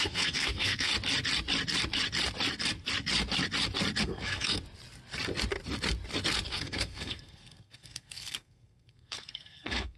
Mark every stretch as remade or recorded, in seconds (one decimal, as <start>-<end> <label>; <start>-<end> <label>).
0.0-0.9 remade; 0.9-4.0 recorded; 4.0-4.6 remade; 4.6-6.5 recorded; 6.5-10.0 remade